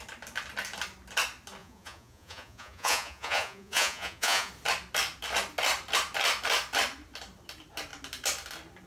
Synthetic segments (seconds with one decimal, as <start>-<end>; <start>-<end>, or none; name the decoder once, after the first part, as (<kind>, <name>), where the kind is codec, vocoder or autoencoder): 1.6-4.5 (vocoder, Vocos)